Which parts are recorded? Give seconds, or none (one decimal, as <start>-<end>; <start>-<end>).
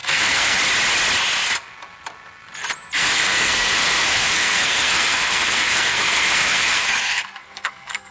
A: 0.6-3.0